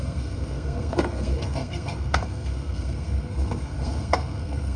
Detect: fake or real fake